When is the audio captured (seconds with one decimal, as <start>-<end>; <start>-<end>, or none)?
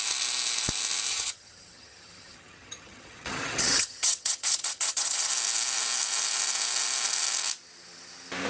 0.0-1.1; 5.3-8.5